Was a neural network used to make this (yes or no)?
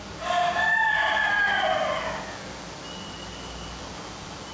yes